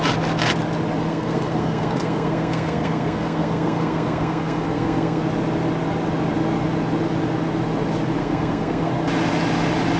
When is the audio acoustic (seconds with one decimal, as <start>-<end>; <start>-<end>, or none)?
0.0-1.1; 5.2-8.2; 8.9-10.0